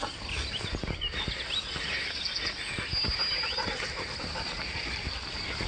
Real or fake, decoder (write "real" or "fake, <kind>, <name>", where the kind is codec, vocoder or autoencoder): real